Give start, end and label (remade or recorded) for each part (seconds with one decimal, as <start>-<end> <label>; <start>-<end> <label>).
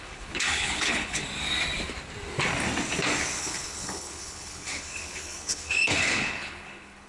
0.0-1.2 remade; 1.2-3.4 recorded; 3.4-7.1 remade